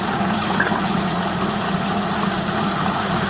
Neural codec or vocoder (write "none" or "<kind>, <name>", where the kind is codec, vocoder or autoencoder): vocoder, Vocos